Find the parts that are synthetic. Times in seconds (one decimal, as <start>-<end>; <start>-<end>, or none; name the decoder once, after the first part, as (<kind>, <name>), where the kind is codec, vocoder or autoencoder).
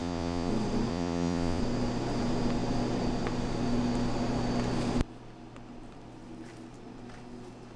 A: 0.0-0.5 (vocoder, Vocos); 0.9-1.6